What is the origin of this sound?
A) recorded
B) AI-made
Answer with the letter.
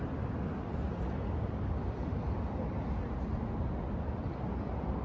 A